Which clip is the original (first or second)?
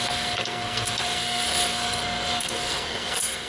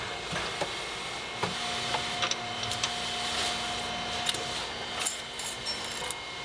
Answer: second